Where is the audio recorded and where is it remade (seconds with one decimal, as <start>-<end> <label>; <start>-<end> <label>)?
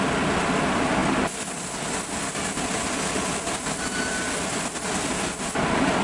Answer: 0.0-6.0 recorded